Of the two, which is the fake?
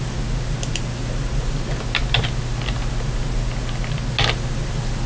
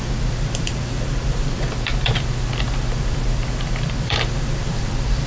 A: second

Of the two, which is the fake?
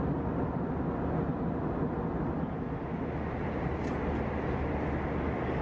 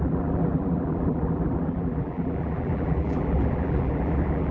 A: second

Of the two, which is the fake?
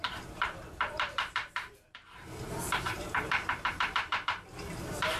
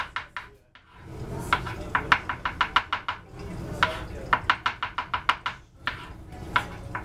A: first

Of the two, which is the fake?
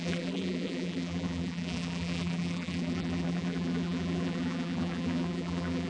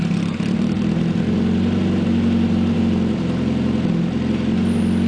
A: first